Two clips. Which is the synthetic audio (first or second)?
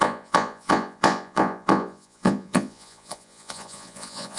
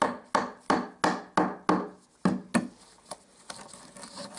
first